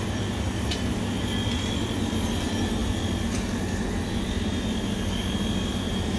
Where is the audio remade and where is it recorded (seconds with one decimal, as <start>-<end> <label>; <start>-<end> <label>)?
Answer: 0.0-6.2 recorded